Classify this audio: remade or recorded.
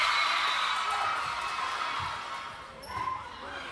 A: recorded